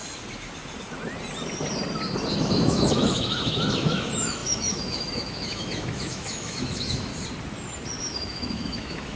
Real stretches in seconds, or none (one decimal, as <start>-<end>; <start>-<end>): 0.0-2.4; 7.1-8.0